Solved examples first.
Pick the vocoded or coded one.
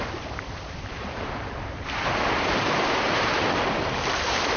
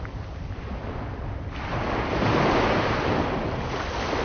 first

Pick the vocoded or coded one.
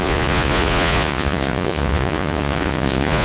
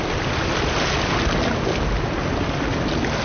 first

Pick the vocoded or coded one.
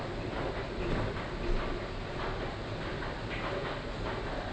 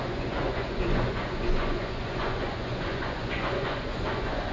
second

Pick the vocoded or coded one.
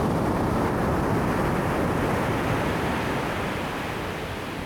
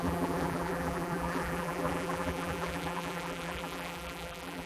second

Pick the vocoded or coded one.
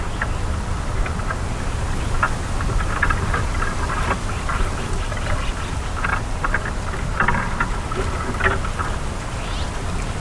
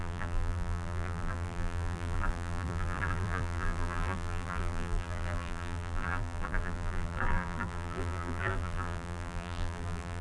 second